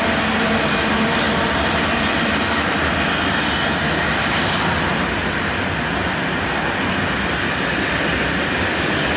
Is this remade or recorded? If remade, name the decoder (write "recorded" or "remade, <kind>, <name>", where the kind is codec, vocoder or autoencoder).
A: recorded